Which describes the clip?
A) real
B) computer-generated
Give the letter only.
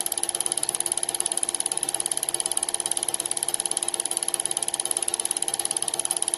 A